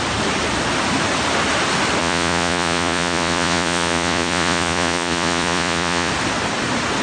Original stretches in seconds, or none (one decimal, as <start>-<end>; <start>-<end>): 0.0-2.0; 6.1-7.0